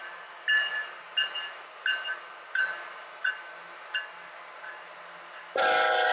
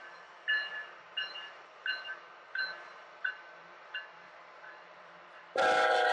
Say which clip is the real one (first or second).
first